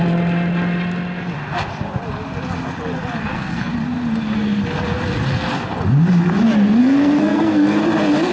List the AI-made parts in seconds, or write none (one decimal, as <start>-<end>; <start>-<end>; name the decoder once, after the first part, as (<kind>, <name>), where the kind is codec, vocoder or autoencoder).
3.2-3.7 (codec, SNAC); 6.8-7.8